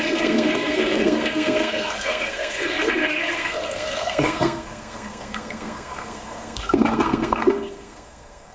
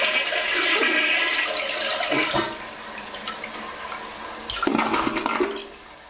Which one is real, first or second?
second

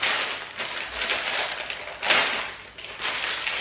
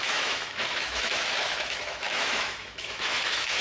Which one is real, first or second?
first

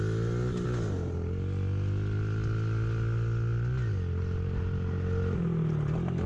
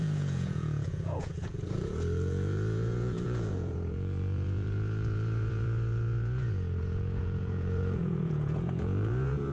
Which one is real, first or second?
first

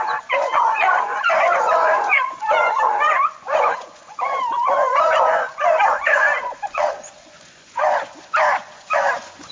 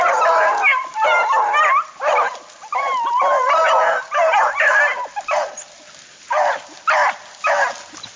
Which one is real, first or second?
second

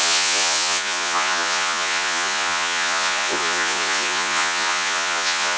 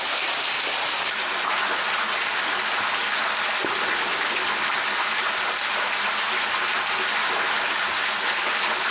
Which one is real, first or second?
second